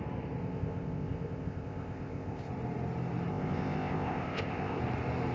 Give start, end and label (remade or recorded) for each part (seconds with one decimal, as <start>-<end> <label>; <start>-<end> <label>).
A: 0.0-0.4 recorded; 0.4-2.5 remade; 2.5-3.3 recorded; 3.3-4.8 remade; 4.8-5.3 recorded